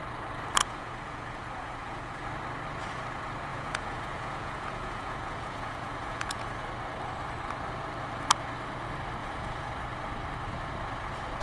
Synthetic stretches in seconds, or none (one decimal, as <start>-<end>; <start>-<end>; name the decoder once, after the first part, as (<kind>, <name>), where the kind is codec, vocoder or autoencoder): 0.6-2.2 (vocoder, Vocos); 3.5-6.6; 9.2-9.7